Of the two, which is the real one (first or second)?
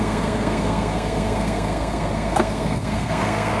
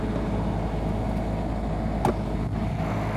second